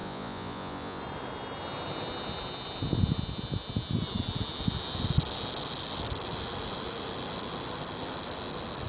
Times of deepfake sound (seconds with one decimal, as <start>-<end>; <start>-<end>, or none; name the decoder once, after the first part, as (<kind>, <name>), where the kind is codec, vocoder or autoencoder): 0.0-1.0 (vocoder, Vocos)